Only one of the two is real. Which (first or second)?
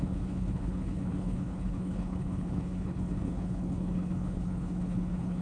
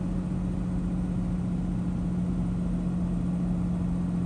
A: second